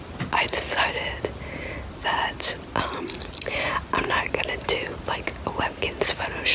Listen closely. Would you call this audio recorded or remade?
recorded